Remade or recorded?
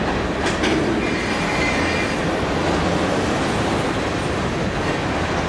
recorded